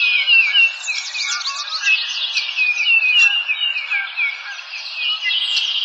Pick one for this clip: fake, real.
real